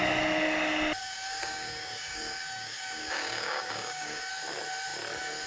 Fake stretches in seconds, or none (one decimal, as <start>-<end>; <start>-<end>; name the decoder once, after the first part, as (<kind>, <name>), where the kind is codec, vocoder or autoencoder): 1.0-4.3 (codec, DAC)